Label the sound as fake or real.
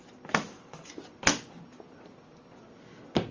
real